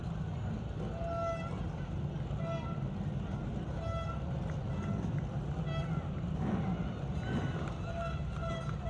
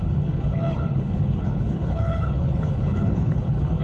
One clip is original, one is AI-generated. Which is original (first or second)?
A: first